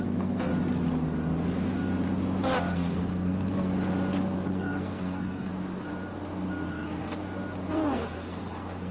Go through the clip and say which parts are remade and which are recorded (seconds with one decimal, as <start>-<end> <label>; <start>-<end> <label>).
0.0-0.5 remade; 0.5-2.7 recorded; 2.7-3.7 remade; 3.7-4.5 recorded; 4.5-5.5 remade; 5.5-6.7 recorded; 6.7-7.2 remade; 7.2-7.7 recorded; 7.7-8.9 remade